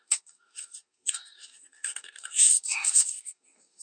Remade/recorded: remade